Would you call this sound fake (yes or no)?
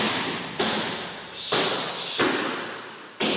no